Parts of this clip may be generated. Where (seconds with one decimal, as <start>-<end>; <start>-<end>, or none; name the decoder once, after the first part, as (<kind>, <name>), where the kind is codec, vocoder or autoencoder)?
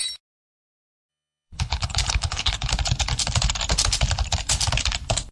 1.1-2.7 (codec, HILCodec)